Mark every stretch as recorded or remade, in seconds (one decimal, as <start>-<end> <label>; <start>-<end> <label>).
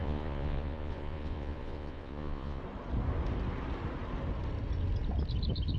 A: 0.0-2.6 remade; 2.6-5.8 recorded